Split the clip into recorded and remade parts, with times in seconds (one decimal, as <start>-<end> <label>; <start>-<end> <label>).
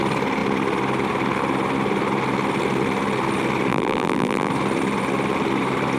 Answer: 0.0-3.7 recorded; 3.7-4.5 remade; 4.5-6.0 recorded